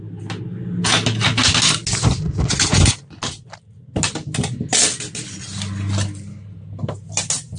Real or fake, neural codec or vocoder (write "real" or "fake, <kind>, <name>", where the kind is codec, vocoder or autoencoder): real